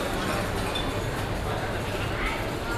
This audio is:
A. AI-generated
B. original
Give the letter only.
A